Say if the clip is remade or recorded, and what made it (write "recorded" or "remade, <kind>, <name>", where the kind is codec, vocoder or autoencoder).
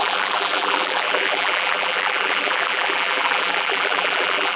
remade, vocoder, BigVGAN v2